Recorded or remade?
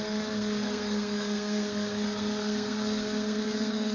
remade